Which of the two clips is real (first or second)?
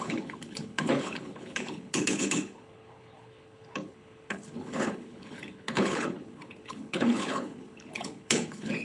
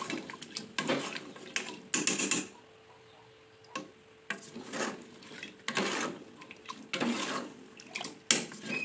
second